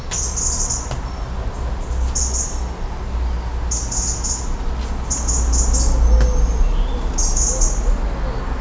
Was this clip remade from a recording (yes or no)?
no